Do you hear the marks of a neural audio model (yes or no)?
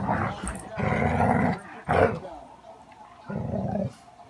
no